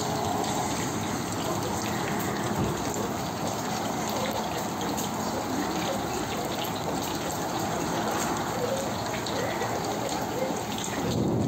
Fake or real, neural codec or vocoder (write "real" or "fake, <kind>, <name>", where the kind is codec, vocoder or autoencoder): real